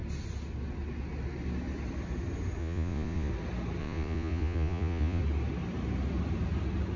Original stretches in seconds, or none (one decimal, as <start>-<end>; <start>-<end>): 0.0-2.6; 3.3-3.8; 5.2-7.0